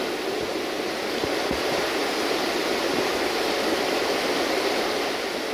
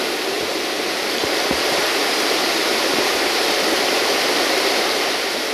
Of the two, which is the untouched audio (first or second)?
first